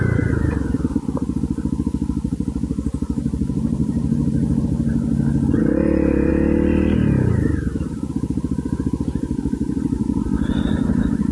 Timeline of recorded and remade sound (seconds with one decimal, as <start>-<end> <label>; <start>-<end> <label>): 0.0-11.3 recorded